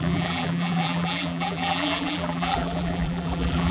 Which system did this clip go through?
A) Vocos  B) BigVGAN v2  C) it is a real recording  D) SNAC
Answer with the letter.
B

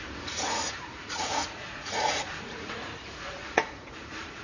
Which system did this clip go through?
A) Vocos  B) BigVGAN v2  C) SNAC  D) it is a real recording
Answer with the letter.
A